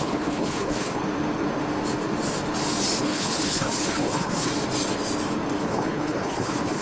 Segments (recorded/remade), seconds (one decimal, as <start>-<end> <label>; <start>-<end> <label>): 0.0-1.0 remade; 1.0-3.0 recorded; 3.0-4.5 remade; 4.5-5.6 recorded; 5.6-6.8 remade